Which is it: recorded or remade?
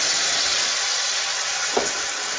recorded